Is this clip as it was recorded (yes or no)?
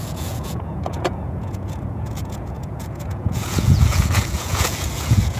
no